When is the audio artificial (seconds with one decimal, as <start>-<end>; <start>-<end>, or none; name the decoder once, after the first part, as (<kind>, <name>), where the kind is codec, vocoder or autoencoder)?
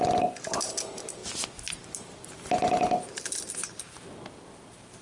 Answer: none